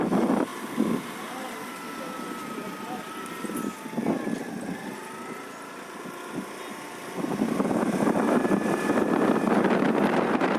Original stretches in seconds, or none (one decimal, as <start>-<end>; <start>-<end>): 0.0-10.6

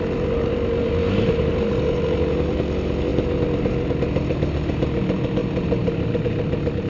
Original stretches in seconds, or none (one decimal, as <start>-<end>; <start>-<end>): 0.0-6.9

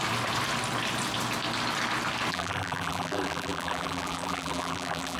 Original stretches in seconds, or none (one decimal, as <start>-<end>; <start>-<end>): 0.0-2.3

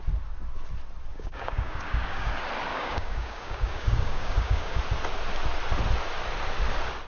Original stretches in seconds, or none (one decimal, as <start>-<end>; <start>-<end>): 0.0-1.1; 2.3-2.7; 4.8-7.1

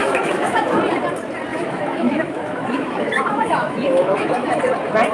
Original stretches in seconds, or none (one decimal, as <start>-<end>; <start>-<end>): 0.8-1.5; 4.6-5.1